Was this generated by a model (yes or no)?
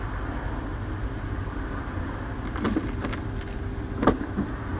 no